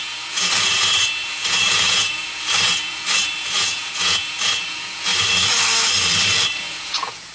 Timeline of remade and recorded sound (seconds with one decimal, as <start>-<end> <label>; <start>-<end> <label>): 0.0-5.1 remade; 5.1-6.6 recorded; 6.6-7.3 remade